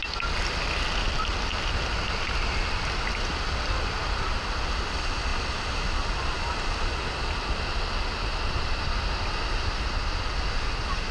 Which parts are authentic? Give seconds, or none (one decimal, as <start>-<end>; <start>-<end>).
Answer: 0.0-11.1